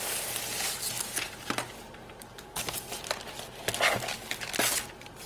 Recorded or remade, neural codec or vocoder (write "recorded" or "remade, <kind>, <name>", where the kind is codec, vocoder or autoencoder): recorded